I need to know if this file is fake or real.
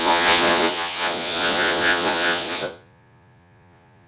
fake